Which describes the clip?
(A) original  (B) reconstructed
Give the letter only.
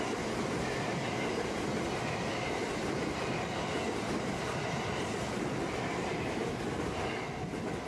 A